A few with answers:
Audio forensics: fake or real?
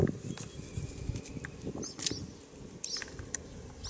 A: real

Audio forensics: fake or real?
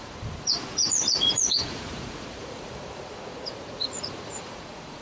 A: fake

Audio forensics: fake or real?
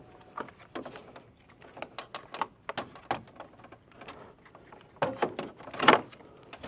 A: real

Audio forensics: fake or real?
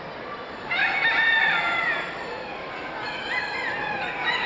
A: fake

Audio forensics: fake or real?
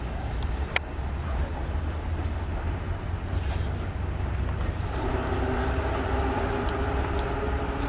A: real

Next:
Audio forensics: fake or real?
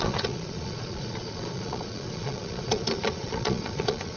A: fake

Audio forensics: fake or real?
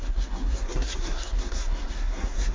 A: fake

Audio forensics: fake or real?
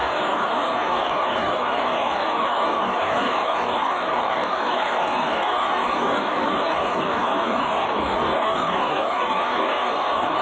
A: fake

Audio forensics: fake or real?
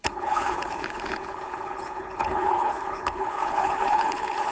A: fake